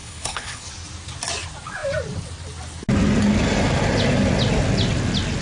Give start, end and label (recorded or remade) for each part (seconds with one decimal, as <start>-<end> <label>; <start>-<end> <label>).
0.0-0.7 remade; 0.7-5.4 recorded